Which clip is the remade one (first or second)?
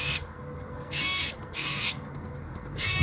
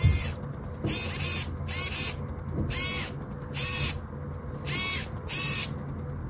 first